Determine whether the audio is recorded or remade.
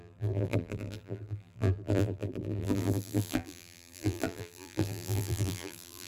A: remade